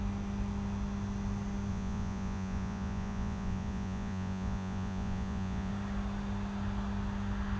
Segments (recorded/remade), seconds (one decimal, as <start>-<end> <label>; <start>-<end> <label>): 0.0-1.7 recorded; 1.7-5.7 remade; 5.7-7.6 recorded